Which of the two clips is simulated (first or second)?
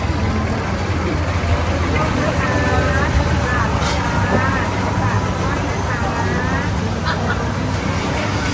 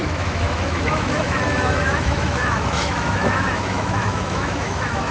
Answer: second